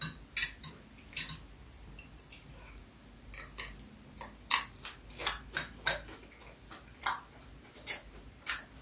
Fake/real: real